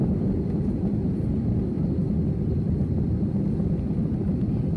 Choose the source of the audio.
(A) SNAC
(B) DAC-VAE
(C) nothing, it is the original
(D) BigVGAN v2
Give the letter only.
C